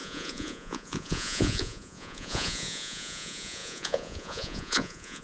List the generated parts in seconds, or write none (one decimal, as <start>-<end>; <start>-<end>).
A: 0.0-5.2